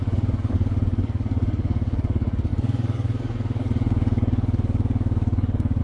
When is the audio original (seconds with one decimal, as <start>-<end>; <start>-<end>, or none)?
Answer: none